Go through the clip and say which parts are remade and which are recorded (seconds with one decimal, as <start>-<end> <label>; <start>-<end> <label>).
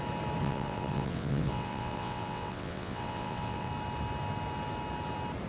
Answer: 0.0-0.4 recorded; 0.4-3.7 remade; 3.7-5.5 recorded